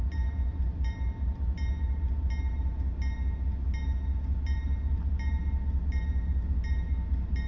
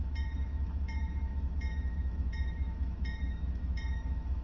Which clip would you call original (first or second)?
first